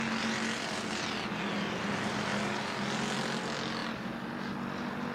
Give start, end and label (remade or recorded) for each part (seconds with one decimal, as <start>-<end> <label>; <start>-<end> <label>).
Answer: 0.0-5.1 recorded